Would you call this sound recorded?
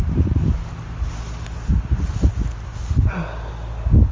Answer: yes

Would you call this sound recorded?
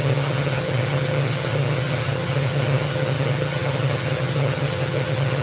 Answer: no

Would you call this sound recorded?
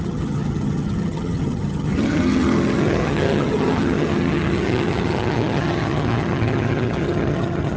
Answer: no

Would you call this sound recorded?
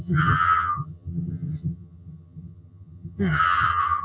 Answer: no